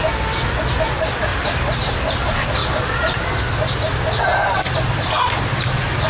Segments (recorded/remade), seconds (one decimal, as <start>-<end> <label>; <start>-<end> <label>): 0.0-1.3 recorded; 1.3-2.0 remade; 2.0-2.6 recorded; 2.6-3.2 remade; 3.2-6.1 recorded